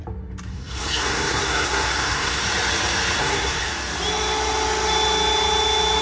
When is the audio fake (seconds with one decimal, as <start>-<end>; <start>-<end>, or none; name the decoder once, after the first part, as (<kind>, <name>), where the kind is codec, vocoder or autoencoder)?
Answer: 0.5-2.4 (codec, SNAC); 3.2-3.7